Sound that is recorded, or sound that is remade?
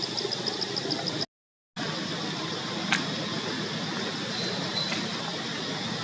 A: recorded